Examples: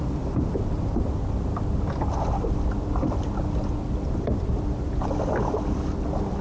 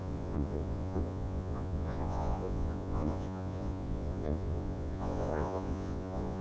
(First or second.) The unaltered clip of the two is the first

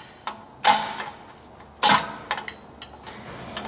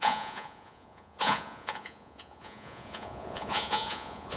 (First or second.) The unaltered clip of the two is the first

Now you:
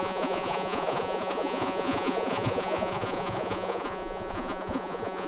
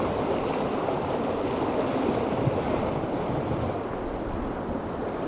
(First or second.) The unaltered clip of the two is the second